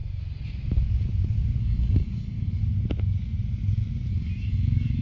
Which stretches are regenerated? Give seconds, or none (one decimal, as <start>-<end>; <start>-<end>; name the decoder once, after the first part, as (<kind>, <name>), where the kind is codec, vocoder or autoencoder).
1.6-2.6 (codec, DAC); 4.1-5.0